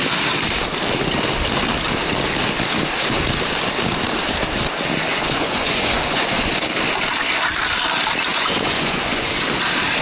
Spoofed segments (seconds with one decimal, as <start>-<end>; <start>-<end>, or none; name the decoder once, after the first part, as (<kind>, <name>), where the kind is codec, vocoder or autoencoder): 5.1-6.5 (vocoder, Vocos); 8.3-9.3